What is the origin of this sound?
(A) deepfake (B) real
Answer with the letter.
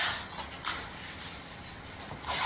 B